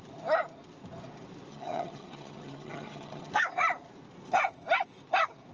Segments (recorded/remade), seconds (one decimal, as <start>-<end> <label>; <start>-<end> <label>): 0.0-1.5 recorded; 1.5-3.3 remade; 3.3-5.5 recorded